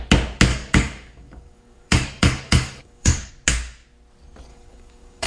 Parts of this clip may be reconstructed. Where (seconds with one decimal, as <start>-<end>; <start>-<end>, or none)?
0.5-3.3; 4.5-5.3